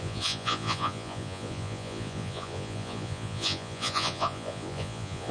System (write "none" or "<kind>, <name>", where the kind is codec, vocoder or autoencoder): vocoder, Vocos